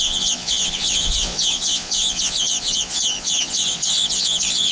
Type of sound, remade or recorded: remade